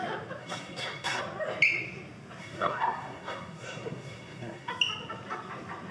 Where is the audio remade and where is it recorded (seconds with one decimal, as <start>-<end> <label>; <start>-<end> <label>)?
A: 0.0-0.4 recorded; 0.4-1.2 remade; 1.2-2.4 recorded; 2.4-4.7 remade; 4.7-5.9 recorded

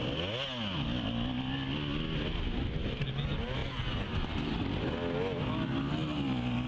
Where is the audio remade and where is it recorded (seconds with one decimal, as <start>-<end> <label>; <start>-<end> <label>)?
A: 0.0-6.7 recorded

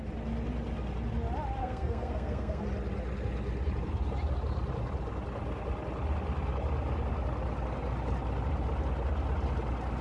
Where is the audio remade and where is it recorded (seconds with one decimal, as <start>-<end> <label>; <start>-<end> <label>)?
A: 0.0-1.6 recorded; 1.6-2.6 remade; 2.6-10.0 recorded

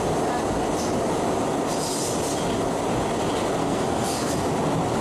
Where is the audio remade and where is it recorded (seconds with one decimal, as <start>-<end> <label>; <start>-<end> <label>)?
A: 0.0-3.6 recorded; 3.6-4.3 remade; 4.3-5.0 recorded

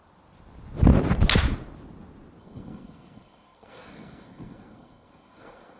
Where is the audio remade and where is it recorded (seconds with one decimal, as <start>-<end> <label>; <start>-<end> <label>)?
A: 0.0-2.4 recorded; 2.4-5.8 remade

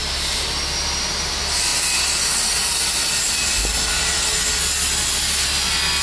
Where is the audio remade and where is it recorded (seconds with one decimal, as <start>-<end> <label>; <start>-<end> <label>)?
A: 0.0-6.0 recorded

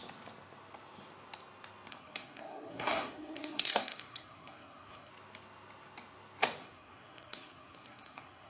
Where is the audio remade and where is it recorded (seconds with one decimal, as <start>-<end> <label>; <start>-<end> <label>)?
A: 0.0-1.9 recorded; 1.9-5.1 remade; 5.1-6.6 recorded; 6.6-8.5 remade

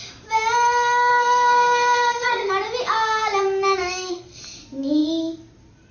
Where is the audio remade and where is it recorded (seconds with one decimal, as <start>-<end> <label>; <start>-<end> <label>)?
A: 0.0-1.1 recorded; 1.1-2.5 remade; 2.5-3.8 recorded; 3.8-4.4 remade; 4.4-5.9 recorded